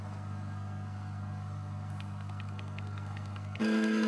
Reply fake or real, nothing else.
fake